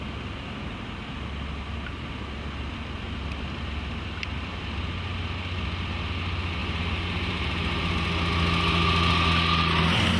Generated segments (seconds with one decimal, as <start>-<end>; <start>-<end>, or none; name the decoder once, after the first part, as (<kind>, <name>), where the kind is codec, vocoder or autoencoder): 6.6-7.9 (vocoder, BigVGAN v2)